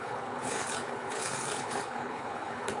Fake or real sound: fake